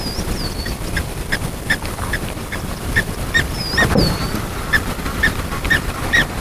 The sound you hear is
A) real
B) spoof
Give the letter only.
B